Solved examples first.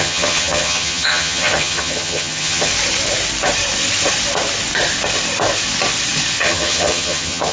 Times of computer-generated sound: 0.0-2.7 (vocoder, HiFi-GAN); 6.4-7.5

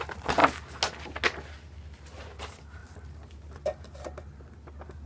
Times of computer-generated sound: none

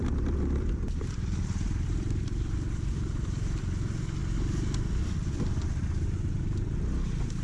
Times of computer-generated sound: 0.0-3.6 (vocoder, BigVGAN v2); 4.2-5.5